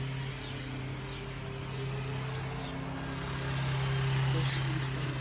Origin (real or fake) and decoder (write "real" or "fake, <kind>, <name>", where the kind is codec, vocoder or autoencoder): real